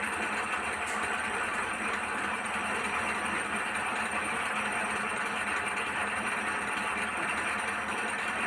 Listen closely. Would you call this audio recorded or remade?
recorded